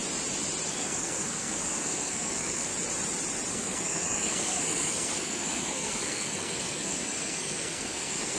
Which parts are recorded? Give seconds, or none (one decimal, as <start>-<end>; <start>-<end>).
0.0-0.7; 2.7-3.5